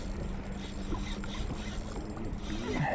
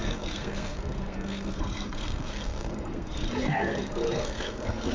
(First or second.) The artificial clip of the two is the second